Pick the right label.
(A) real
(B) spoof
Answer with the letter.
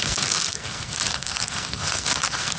B